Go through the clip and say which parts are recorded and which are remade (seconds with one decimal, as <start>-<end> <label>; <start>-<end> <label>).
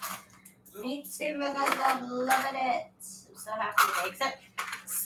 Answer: 0.0-0.8 recorded; 0.8-2.0 remade; 2.0-5.0 recorded